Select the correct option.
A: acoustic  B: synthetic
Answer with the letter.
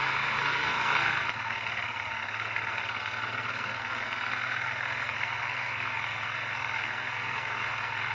B